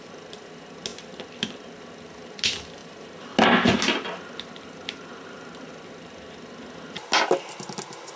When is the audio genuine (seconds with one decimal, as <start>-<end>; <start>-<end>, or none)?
0.0-8.2